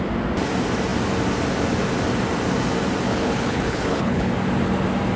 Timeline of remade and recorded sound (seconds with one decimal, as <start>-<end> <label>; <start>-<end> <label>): 0.0-3.1 recorded; 3.1-4.3 remade; 4.3-5.2 recorded